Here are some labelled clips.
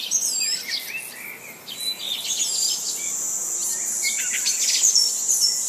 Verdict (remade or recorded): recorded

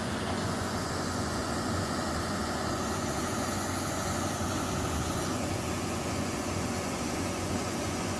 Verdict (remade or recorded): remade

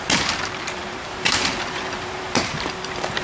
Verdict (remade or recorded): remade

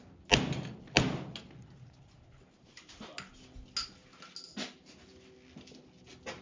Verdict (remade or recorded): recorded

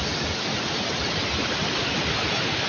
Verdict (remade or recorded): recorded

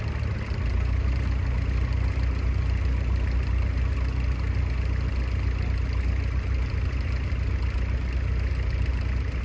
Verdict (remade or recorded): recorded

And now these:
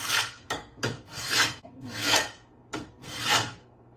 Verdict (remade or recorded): remade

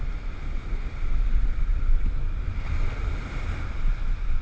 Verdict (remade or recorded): recorded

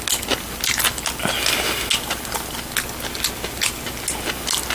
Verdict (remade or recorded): recorded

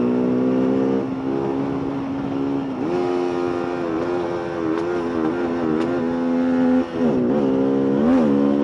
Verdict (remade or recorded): recorded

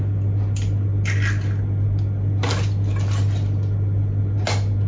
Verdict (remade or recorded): recorded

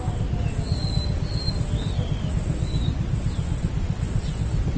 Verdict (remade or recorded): recorded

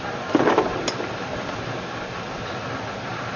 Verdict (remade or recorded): remade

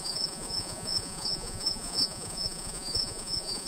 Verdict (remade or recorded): remade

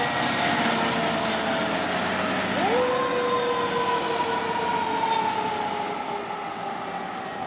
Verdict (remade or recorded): recorded